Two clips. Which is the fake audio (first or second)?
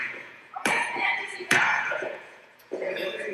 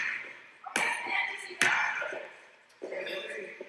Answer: first